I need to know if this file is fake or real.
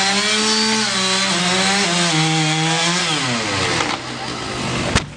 real